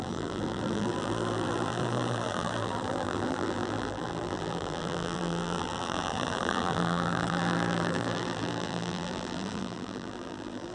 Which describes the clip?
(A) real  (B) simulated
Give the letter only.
B